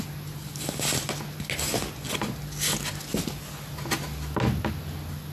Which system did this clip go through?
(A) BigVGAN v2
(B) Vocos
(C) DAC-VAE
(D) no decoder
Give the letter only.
D